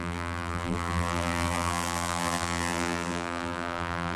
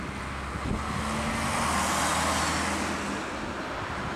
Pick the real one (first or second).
second